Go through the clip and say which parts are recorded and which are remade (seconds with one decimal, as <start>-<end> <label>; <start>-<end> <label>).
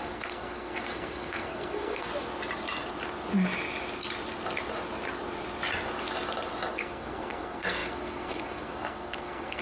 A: 0.0-2.1 remade; 2.1-6.7 recorded; 6.7-9.6 remade